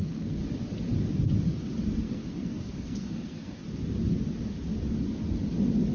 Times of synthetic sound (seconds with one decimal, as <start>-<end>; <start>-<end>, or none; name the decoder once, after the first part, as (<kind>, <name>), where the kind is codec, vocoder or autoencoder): 0.0-0.4 (codec, SNAC); 2.0-3.6